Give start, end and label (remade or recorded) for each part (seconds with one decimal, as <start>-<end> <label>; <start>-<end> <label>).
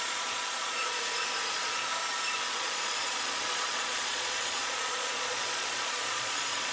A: 0.0-1.0 remade; 1.0-1.5 recorded; 1.5-1.9 remade; 1.9-2.5 recorded; 2.5-6.7 remade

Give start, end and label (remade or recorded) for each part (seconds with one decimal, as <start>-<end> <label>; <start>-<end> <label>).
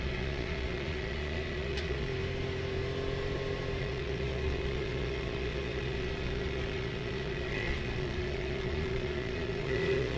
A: 0.0-2.1 remade; 2.1-3.8 recorded; 3.8-10.2 remade